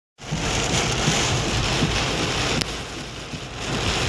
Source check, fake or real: real